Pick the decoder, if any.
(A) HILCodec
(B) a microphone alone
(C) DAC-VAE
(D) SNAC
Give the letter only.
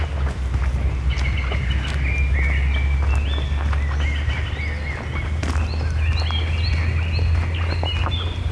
B